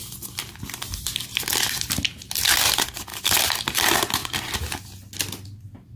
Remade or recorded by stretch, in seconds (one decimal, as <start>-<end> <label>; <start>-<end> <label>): 0.0-6.0 recorded